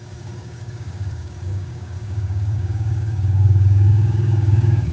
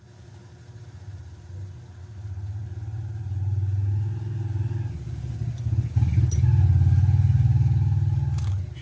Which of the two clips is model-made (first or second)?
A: first